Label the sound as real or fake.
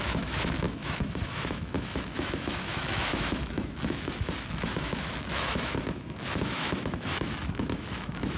fake